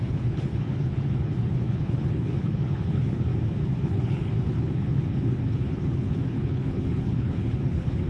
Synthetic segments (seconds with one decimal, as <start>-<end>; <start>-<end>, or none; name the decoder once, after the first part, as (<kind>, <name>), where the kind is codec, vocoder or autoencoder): 0.0-3.3 (codec, HILCodec); 3.8-8.1